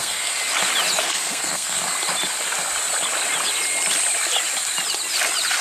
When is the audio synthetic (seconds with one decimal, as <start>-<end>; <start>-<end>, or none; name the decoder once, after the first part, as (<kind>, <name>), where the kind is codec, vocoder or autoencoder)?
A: 0.0-0.4 (codec, SNAC); 1.0-1.8